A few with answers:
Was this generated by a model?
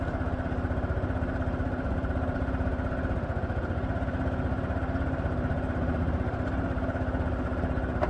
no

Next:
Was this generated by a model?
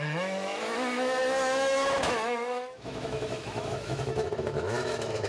yes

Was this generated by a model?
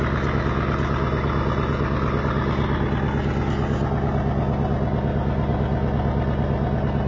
no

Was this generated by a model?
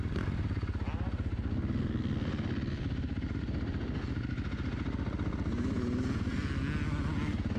no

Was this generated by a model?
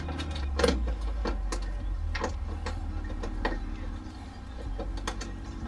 no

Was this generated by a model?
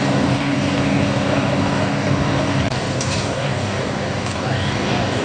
yes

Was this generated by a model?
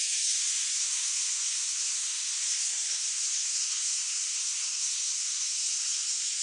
yes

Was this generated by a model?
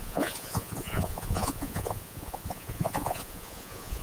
yes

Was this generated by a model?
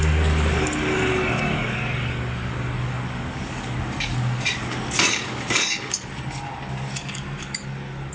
yes